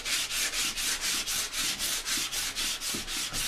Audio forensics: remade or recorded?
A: recorded